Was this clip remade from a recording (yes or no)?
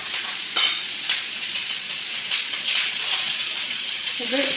yes